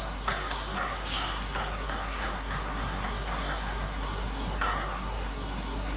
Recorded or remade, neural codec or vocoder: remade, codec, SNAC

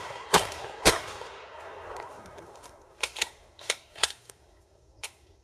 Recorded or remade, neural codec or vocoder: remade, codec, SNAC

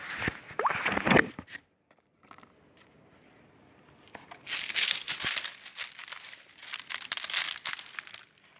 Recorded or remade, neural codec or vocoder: recorded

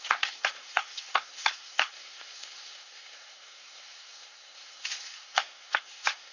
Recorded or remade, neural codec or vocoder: remade, codec, SNAC